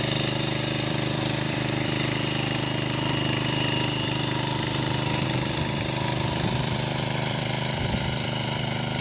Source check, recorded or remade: remade